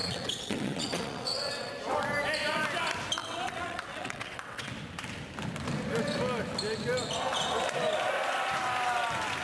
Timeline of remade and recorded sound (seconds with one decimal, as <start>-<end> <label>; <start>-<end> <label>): 0.0-1.7 remade; 1.7-3.2 recorded; 3.2-4.7 remade; 4.7-9.4 recorded